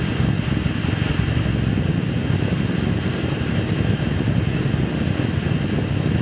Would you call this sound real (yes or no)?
yes